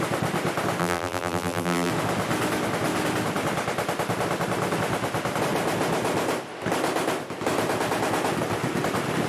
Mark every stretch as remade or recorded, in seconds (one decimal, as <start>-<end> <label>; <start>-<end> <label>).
0.0-0.8 recorded; 0.8-1.9 remade; 1.9-9.3 recorded